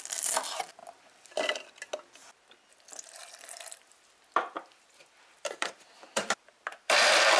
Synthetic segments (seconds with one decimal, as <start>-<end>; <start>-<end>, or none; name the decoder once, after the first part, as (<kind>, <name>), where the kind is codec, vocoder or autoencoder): 3.2-7.4 (vocoder, BigVGAN v2)